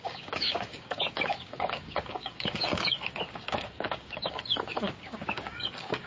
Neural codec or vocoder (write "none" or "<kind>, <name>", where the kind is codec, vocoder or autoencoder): codec, DAC